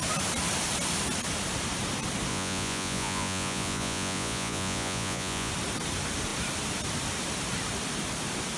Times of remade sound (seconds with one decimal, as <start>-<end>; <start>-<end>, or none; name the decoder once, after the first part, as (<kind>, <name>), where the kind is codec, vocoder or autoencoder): 2.3-5.5 (vocoder, Vocos)